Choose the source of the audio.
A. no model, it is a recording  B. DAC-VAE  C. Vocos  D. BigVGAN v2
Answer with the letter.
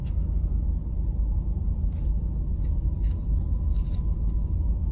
A